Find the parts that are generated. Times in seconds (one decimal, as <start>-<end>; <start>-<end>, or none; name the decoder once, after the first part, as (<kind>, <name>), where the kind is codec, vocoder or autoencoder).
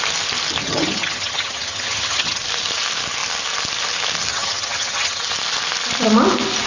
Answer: 0.6-2.4 (vocoder, HiFi-GAN); 4.3-5.2